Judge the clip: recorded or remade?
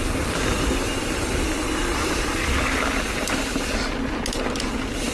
recorded